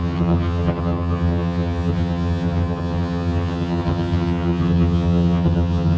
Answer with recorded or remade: remade